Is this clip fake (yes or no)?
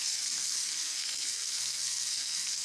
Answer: yes